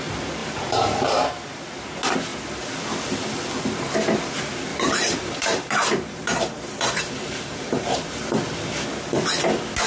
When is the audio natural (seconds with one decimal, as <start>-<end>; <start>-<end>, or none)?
0.0-0.4; 1.3-4.7; 8.4-9.9